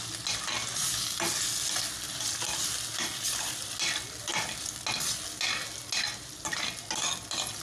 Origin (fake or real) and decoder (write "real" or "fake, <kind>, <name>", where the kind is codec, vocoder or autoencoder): real